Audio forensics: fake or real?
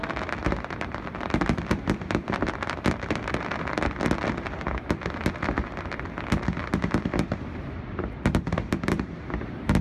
real